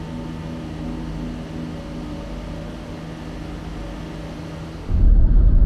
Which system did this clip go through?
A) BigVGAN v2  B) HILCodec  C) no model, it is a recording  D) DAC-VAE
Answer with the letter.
C